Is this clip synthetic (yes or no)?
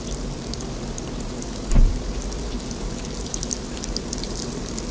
no